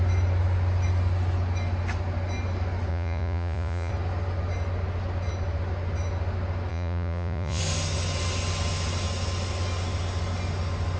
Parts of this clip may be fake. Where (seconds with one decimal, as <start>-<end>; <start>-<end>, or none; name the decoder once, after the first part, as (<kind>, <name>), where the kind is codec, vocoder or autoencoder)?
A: 2.9-3.9 (vocoder, Vocos); 6.7-7.6